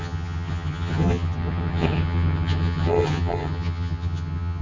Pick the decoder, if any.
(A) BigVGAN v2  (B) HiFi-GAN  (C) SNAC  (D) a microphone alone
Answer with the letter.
B